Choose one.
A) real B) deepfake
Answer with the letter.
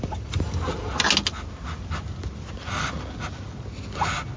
A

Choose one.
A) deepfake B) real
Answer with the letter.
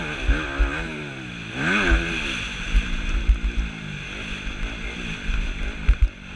B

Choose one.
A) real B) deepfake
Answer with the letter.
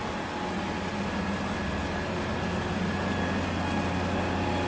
A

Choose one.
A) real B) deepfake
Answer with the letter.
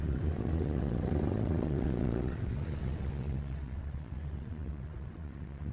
B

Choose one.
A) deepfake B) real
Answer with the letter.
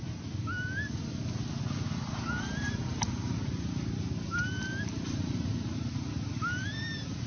B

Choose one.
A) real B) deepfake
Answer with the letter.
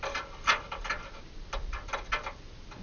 A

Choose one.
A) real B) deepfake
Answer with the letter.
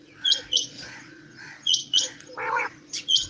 B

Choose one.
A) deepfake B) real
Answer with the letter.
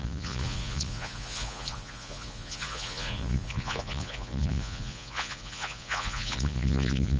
A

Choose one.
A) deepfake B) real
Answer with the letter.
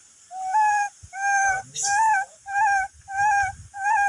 A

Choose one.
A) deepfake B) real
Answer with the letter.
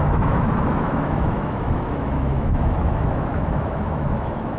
A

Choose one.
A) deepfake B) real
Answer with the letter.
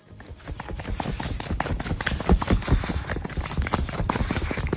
B